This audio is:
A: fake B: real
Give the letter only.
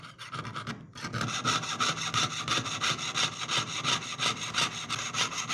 B